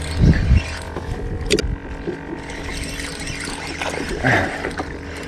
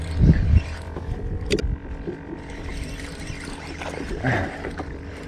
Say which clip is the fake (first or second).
second